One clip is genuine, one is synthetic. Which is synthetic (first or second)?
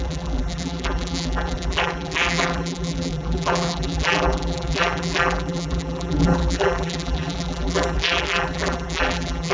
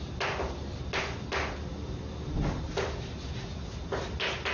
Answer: first